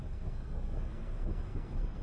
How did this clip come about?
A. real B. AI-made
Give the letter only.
B